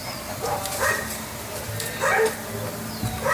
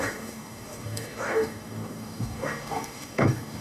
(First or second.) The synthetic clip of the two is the second